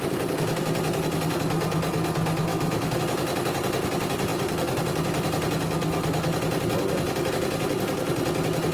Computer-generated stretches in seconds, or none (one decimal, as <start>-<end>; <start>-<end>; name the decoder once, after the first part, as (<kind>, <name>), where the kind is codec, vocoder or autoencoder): 2.5-3.0 (autoencoder, DAC-VAE)